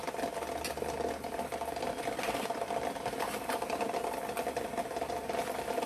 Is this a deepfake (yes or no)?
no